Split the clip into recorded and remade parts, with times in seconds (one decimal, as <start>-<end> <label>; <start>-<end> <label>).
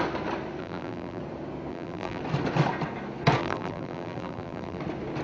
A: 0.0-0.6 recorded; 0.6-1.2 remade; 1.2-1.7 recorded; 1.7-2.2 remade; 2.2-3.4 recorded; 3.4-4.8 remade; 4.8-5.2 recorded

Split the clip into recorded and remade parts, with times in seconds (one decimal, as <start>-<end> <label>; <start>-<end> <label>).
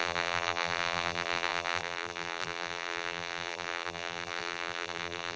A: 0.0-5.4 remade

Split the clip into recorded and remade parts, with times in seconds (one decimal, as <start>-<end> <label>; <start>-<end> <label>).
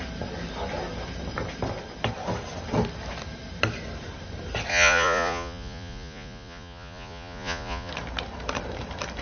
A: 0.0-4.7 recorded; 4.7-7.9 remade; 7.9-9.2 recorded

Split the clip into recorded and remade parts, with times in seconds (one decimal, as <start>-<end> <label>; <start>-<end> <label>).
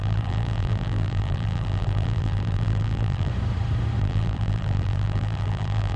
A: 0.0-3.3 remade; 3.3-4.0 recorded; 4.0-6.0 remade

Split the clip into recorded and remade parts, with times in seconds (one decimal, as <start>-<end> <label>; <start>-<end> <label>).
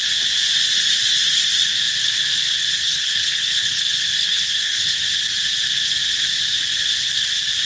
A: 0.0-2.8 recorded; 2.8-3.8 remade; 3.8-4.2 recorded; 4.2-5.0 remade; 5.0-7.7 recorded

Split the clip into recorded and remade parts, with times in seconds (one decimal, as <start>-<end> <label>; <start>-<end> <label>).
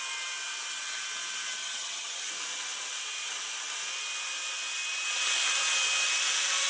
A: 0.0-1.6 recorded; 1.6-2.3 remade; 2.3-6.7 recorded